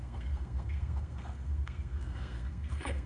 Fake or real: fake